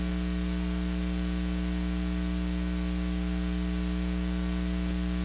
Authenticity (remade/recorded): recorded